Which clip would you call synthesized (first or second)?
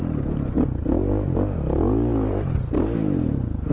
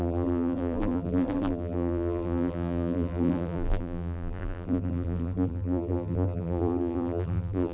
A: second